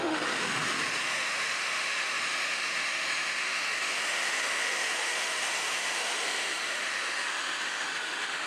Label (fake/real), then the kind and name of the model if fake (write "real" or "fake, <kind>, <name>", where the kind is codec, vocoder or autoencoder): fake, autoencoder, DAC-VAE